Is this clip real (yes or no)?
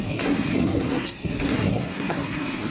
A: no